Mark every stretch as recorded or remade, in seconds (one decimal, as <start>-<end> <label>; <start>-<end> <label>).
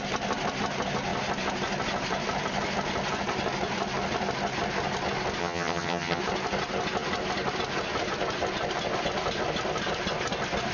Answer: 0.0-5.4 recorded; 5.4-6.2 remade; 6.2-10.7 recorded